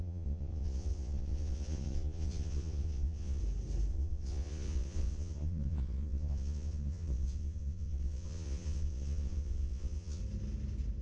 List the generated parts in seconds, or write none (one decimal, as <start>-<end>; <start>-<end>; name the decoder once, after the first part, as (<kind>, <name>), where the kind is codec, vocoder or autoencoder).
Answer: 0.0-3.4 (vocoder, Vocos); 3.9-10.2